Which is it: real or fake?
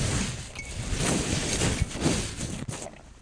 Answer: real